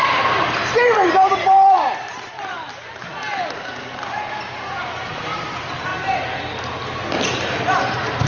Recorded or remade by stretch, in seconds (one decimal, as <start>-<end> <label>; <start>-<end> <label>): 0.0-3.1 remade; 3.1-4.4 recorded; 4.4-5.9 remade; 5.9-7.8 recorded; 7.8-8.3 remade